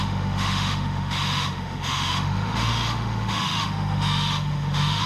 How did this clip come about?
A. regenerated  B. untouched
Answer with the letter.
A